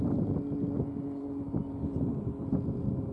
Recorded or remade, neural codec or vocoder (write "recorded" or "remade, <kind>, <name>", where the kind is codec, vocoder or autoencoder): recorded